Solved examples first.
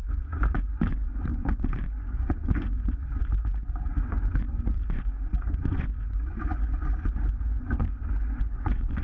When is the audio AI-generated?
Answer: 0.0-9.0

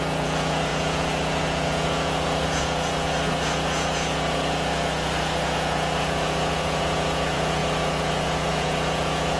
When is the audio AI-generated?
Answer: 0.0-9.4

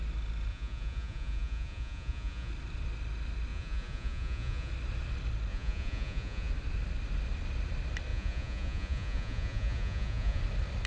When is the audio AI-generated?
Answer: 0.5-2.5; 3.5-4.7; 5.5-6.5; 8.1-10.4

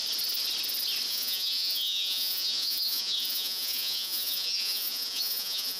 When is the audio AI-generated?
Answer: 1.1-5.8

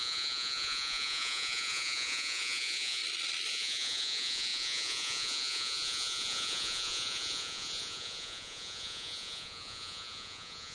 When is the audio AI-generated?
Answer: 0.0-3.0; 3.5-10.7

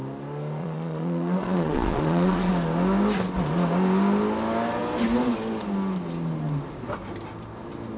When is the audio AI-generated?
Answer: 0.6-2.5

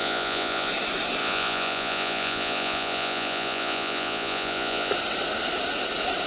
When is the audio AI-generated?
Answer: 0.0-0.7; 1.2-4.9

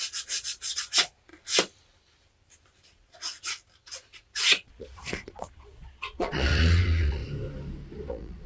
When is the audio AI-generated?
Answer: 0.0-1.3; 3.8-7.2; 8.1-8.5